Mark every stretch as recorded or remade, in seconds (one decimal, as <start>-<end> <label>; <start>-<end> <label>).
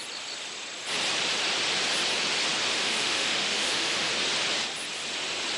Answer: 0.0-2.7 recorded; 2.7-4.1 remade; 4.1-5.6 recorded